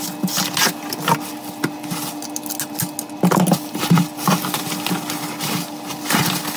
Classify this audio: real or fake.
real